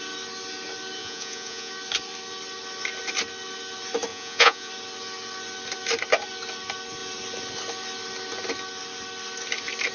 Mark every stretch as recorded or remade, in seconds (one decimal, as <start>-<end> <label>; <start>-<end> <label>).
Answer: 0.0-1.0 recorded; 1.0-1.7 remade; 1.7-4.1 recorded; 4.1-4.7 remade; 4.7-9.9 recorded